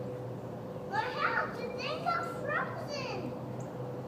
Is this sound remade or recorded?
recorded